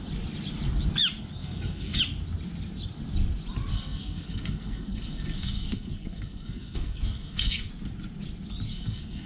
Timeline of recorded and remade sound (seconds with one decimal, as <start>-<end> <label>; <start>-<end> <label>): 0.0-1.4 recorded; 1.4-2.0 remade; 2.0-3.7 recorded; 3.7-7.7 remade; 7.7-8.7 recorded; 8.7-9.3 remade

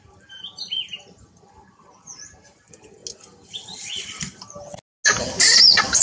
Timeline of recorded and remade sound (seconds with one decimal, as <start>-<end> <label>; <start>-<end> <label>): 0.0-3.0 remade; 3.0-5.4 recorded; 5.4-6.0 remade